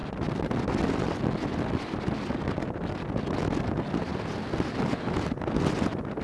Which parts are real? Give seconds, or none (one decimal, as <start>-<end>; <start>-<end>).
0.0-6.2